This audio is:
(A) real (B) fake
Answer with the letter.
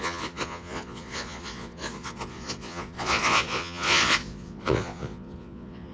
B